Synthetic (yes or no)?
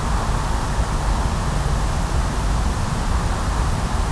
no